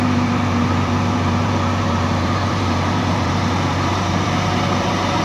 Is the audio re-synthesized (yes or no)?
yes